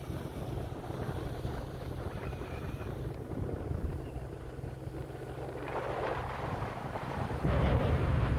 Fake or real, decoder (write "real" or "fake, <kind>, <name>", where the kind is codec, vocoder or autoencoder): fake, vocoder, BigVGAN v2